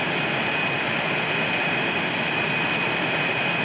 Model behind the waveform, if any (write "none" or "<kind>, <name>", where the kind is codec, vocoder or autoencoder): none